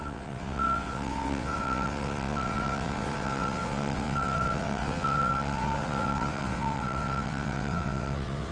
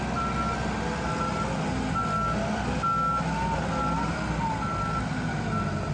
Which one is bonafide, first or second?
second